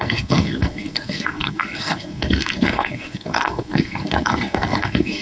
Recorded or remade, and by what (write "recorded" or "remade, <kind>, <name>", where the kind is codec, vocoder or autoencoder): remade, codec, SNAC